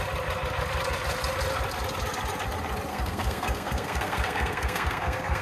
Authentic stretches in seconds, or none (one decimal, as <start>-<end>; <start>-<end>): 0.0-2.9